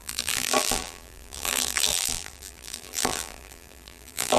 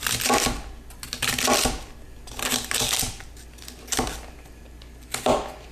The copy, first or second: first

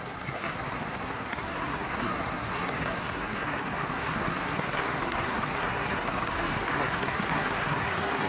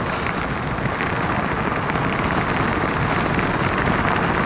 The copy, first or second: first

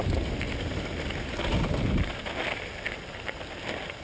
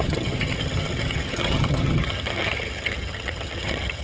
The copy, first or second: second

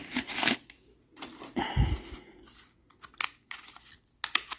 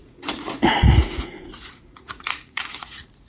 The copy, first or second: second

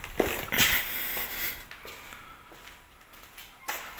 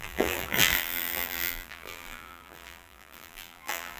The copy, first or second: second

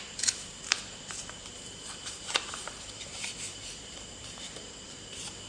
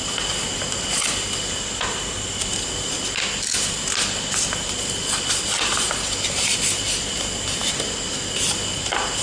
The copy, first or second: first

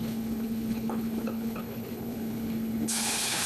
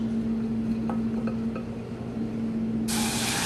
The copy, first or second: first